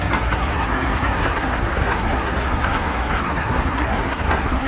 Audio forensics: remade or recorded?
remade